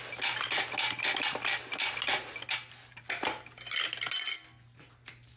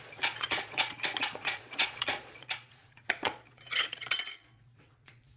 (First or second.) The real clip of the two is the first